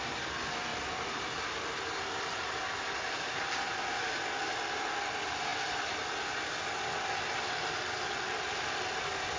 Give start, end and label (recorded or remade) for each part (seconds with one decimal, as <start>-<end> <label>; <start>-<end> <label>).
0.0-9.4 recorded